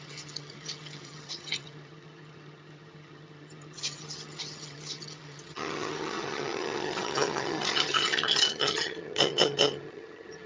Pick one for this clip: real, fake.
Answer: fake